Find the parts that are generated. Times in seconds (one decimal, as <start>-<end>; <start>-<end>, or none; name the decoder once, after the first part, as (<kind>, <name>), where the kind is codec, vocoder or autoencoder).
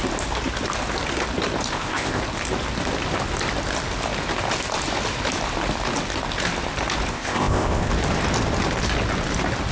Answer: 1.7-2.2 (codec, ZipCodec); 7.1-7.9